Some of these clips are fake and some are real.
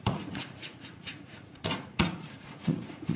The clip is fake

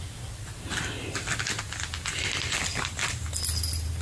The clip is real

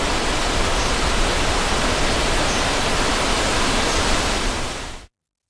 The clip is real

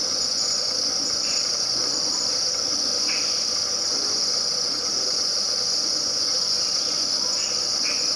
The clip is fake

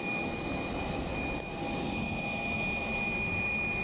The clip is real